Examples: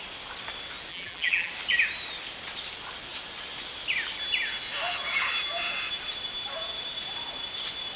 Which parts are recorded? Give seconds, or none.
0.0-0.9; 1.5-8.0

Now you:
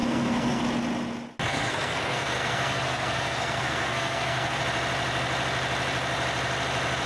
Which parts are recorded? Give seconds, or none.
0.6-1.5; 4.6-7.1